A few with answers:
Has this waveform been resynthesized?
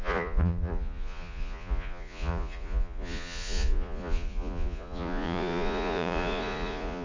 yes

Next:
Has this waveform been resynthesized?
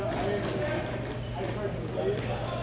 no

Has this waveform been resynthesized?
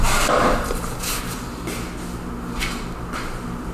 no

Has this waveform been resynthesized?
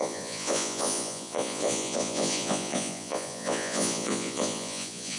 yes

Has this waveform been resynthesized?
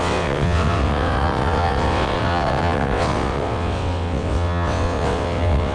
yes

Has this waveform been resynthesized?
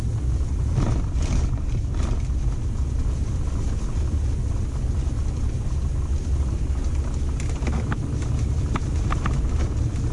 no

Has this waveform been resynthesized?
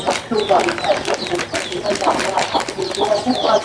no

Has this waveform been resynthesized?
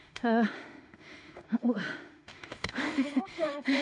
yes